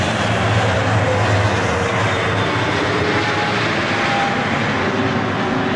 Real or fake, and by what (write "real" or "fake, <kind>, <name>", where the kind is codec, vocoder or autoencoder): real